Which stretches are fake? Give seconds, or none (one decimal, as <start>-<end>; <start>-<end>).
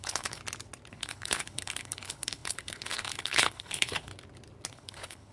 0.0-0.4; 0.9-4.1; 4.7-5.3